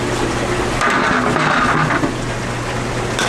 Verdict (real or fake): real